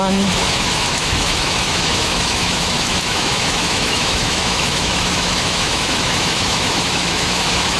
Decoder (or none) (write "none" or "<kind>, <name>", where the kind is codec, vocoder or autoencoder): autoencoder, DAC-VAE